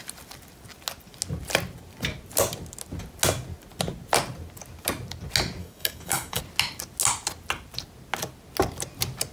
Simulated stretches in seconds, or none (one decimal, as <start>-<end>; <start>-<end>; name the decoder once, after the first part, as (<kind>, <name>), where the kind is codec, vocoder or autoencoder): 5.6-6.4 (codec, DAC)

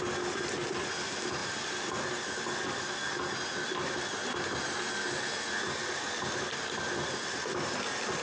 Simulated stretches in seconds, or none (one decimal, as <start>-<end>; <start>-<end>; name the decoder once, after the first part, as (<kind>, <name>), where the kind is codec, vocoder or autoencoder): none

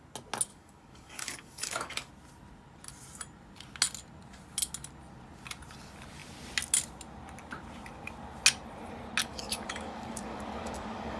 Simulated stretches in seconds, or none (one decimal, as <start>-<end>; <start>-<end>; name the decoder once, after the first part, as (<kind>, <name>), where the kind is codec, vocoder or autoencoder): 0.5-2.1 (codec, DAC); 9.3-11.2

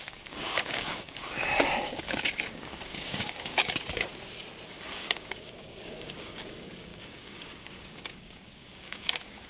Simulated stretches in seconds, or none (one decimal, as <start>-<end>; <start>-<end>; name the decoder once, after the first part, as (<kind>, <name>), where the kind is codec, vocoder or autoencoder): 0.0-4.1 (codec, DAC); 4.7-9.5

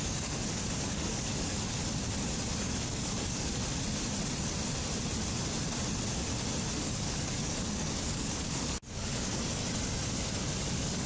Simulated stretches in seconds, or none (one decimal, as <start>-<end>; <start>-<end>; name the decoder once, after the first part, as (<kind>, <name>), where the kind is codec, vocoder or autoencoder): 0.0-1.8 (codec, DAC); 2.6-3.6; 6.8-9.6; 10.7-11.1

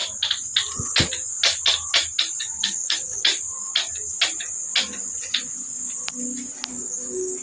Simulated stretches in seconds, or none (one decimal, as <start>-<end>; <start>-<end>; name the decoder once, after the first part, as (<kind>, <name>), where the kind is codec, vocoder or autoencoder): 2.4-3.3 (codec, DAC); 6.7-7.4

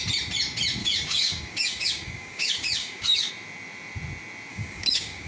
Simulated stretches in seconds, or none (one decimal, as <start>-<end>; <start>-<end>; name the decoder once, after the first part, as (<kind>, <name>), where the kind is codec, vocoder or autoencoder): 0.8-3.3 (codec, DAC); 4.5-5.3